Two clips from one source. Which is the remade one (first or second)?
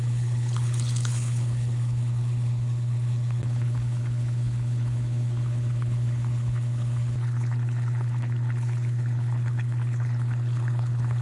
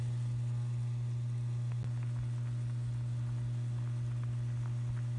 first